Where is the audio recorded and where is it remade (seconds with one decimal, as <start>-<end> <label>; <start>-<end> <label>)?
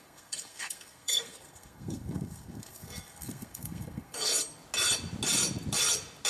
0.0-4.3 remade; 4.3-6.3 recorded